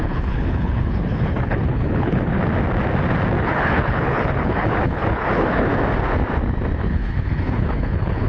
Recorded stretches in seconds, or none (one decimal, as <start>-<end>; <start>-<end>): 2.4-3.4; 5.7-6.8